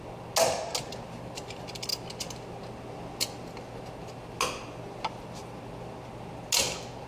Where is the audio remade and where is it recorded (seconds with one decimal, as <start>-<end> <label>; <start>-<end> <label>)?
0.0-7.1 recorded